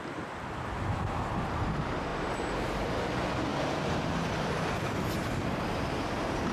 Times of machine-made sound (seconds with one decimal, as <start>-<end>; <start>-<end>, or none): 3.5-5.0